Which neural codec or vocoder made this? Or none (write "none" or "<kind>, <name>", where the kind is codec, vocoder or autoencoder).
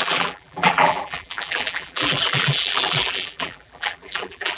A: vocoder, BigVGAN v2